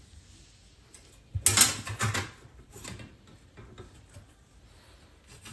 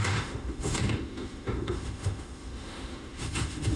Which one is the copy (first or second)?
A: second